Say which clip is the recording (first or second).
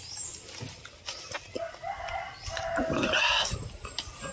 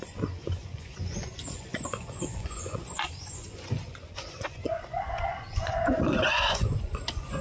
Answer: first